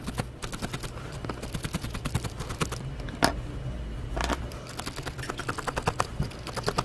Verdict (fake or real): real